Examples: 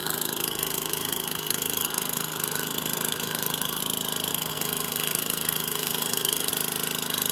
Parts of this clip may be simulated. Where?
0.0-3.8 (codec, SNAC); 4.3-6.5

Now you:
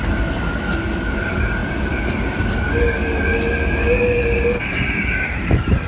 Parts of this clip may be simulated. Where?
none

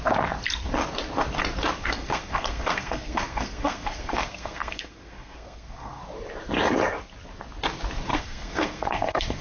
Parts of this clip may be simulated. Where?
1.8-6.0 (codec, SNAC); 8.1-9.4

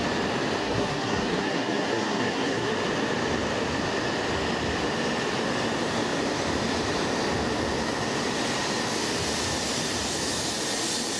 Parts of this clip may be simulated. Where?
0.6-2.7 (codec, SNAC)

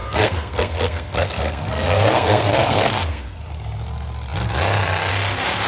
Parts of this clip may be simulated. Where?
0.0-3.4 (codec, SNAC)

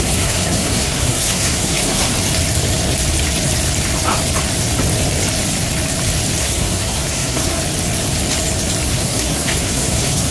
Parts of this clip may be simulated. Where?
0.0-2.1 (codec, SNAC); 6.4-7.6; 8.9-10.3